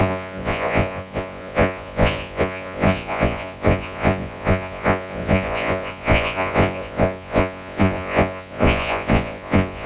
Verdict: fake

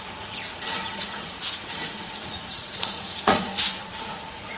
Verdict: fake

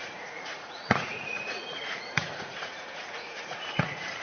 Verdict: fake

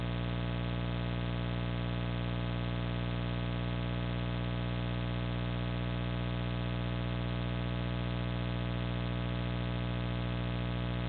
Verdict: real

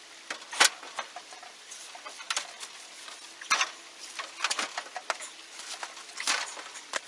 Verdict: real